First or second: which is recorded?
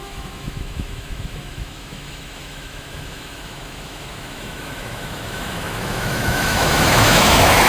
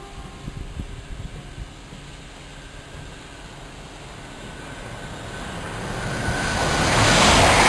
second